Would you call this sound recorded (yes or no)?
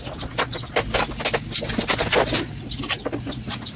yes